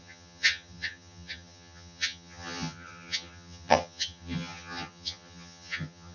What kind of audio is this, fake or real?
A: fake